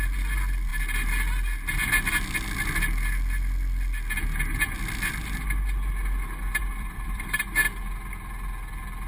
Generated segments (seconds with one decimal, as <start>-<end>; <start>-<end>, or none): 6.6-7.4